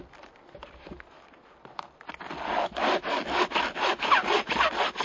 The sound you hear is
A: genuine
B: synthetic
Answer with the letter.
A